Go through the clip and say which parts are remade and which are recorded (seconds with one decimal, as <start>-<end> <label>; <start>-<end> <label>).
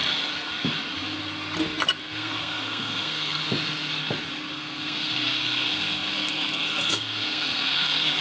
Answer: 0.0-2.0 recorded; 2.0-3.4 remade; 3.4-4.5 recorded; 4.5-8.2 remade